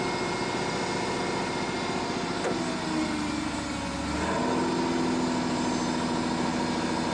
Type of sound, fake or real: real